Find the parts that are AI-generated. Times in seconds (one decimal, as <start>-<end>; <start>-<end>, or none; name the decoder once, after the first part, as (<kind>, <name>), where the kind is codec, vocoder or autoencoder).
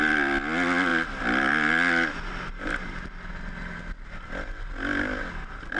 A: none